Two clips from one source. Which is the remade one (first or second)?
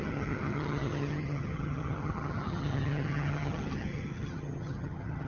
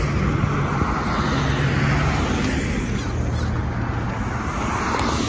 first